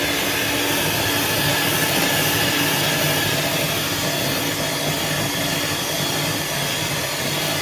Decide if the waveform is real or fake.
real